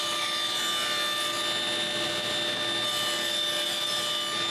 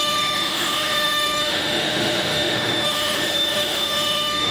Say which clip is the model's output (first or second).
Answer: second